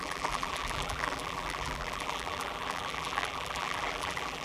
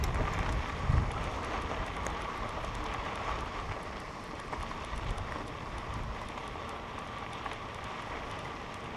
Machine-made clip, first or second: first